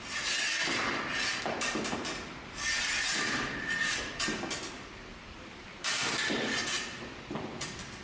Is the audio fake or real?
fake